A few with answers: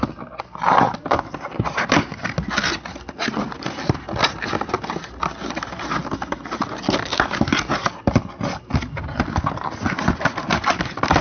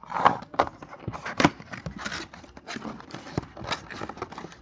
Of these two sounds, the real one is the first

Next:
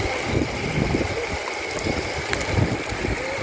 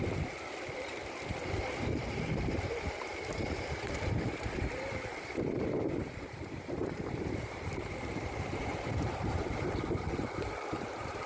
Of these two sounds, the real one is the first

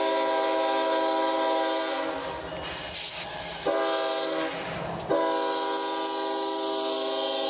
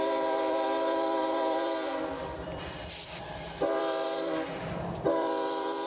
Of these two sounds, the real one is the first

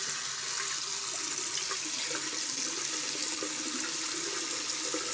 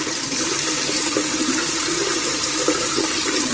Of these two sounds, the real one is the first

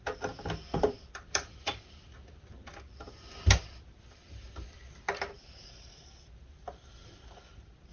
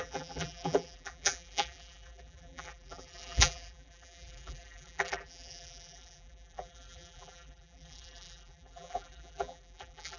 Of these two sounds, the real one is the first